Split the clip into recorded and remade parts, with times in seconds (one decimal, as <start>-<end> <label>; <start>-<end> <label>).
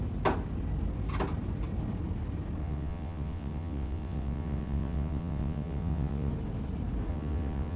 0.0-2.6 recorded; 2.6-6.3 remade; 6.3-7.1 recorded; 7.1-7.8 remade